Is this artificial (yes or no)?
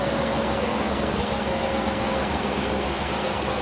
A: yes